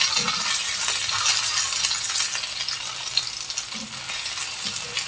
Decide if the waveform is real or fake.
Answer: real